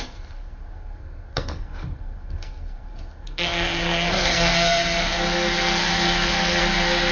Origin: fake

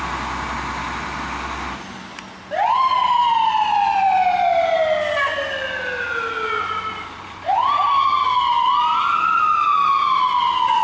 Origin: real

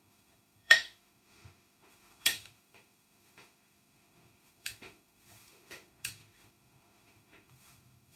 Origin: fake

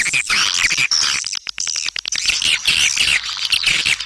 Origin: real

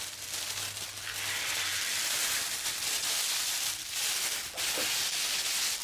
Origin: real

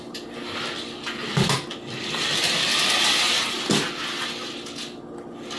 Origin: real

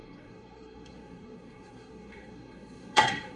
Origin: fake